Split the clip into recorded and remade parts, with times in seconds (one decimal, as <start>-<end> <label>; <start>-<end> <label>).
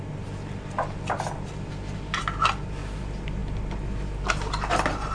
0.0-5.1 recorded